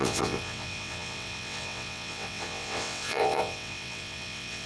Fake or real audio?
fake